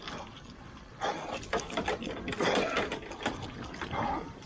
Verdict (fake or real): real